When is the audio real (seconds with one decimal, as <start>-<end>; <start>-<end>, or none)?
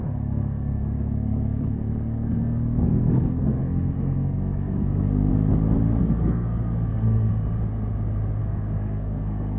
5.3-6.0; 7.3-8.4